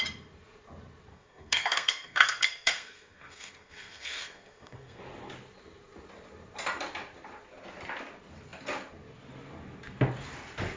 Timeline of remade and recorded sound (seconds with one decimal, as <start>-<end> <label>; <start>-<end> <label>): 0.0-1.1 recorded; 1.1-5.0 remade; 5.0-10.8 recorded